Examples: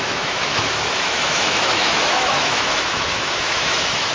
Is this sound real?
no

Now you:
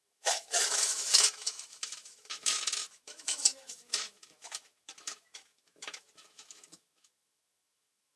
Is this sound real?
no